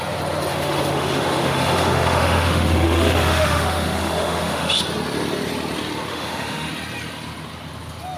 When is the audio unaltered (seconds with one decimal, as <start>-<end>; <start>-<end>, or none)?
0.0-0.5; 4.8-6.1; 6.7-8.2